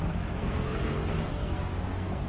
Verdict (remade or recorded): remade